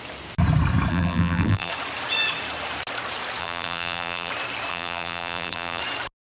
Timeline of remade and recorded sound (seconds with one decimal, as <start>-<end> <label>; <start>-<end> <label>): 0.0-0.9 recorded; 0.9-1.7 remade; 1.7-3.4 recorded; 3.4-4.3 remade; 4.3-4.7 recorded; 4.7-5.8 remade; 5.8-6.2 recorded